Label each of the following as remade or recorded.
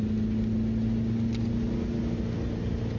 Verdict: recorded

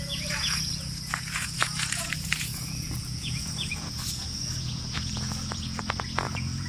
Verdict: remade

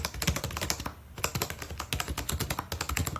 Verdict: recorded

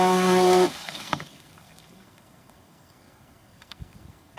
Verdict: remade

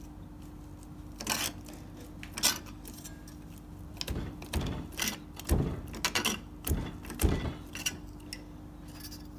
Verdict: recorded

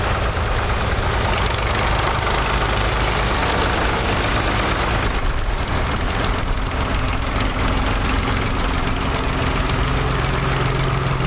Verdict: recorded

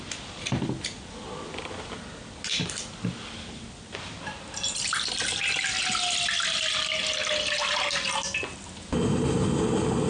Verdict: recorded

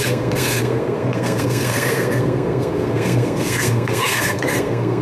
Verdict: remade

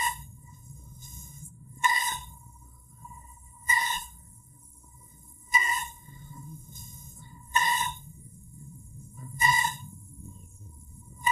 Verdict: remade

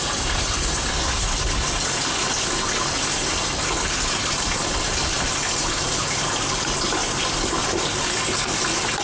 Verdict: recorded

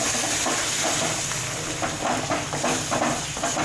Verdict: recorded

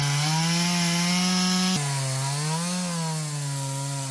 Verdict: recorded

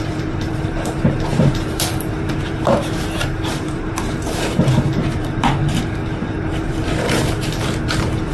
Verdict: remade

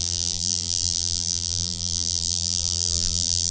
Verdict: remade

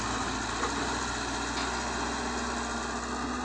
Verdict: recorded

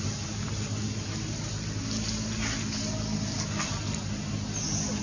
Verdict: recorded